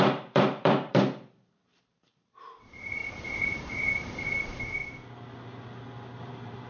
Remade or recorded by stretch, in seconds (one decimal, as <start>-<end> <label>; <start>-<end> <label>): 0.0-4.8 remade; 4.8-6.2 recorded; 6.2-6.7 remade